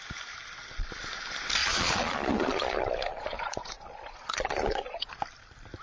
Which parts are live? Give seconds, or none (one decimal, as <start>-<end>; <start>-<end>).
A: 0.0-1.6; 5.1-5.8